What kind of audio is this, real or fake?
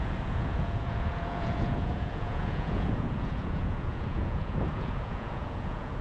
fake